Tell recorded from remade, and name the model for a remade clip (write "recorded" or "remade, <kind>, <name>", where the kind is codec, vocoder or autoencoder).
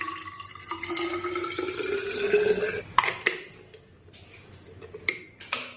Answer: recorded